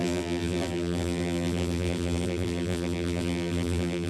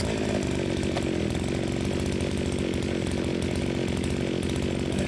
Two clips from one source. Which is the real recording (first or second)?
second